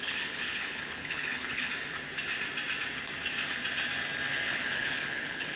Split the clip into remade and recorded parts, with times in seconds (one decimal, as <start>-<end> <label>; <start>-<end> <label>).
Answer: 0.0-1.7 remade; 1.7-4.5 recorded; 4.5-5.6 remade